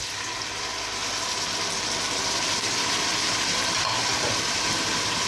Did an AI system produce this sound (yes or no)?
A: no